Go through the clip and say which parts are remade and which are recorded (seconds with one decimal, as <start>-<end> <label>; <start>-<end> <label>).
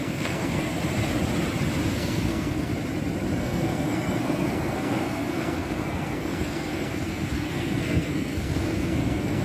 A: 0.0-0.7 remade; 0.7-1.9 recorded; 1.9-2.7 remade; 2.7-3.4 recorded; 3.4-9.4 remade